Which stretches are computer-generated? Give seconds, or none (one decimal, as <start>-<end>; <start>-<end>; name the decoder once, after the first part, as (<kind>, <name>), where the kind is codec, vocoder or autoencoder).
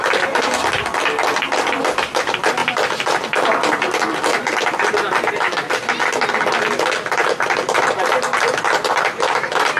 none